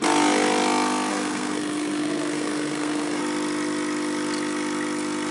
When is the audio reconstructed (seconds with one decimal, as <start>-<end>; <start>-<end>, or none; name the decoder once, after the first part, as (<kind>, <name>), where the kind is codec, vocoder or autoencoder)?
1.1-3.2 (codec, SNAC)